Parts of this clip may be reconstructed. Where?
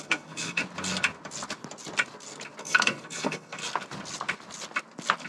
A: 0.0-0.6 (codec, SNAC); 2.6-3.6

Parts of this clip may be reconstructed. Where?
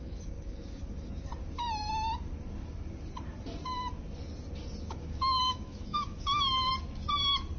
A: 0.0-1.3 (autoencoder, DAC-VAE); 4.8-6.7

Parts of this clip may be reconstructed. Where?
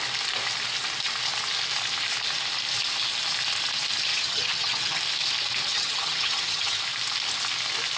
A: 4.1-5.0 (vocoder, HiFi-GAN); 5.7-6.8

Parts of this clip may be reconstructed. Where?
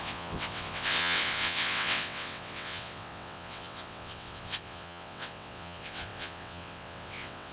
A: 0.0-7.5 (vocoder, WaveNeXt)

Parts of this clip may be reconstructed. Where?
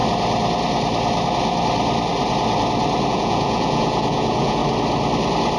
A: 3.1-4.6 (vocoder, Vocos)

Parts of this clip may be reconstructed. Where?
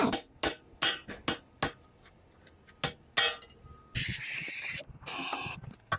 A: none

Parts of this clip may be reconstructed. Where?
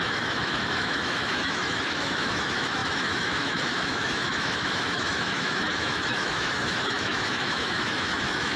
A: 0.0-8.6 (autoencoder, DAC-VAE)